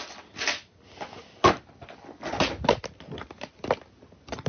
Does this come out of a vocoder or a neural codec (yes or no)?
no